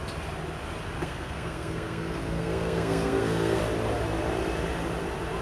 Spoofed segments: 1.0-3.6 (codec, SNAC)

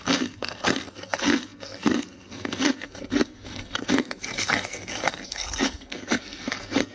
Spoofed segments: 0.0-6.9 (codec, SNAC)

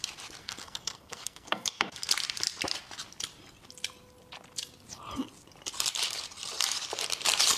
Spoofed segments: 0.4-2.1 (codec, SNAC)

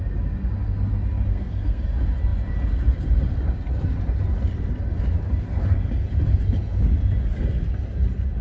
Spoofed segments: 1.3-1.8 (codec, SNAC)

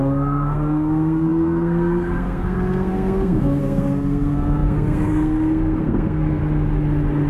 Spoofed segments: 0.0-6.4 (codec, SNAC)

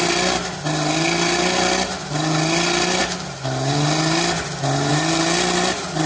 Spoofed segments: none

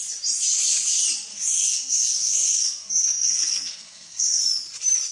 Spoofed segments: 1.3-4.4 (codec, SNAC)